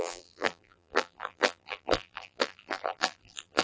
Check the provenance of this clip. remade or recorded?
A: remade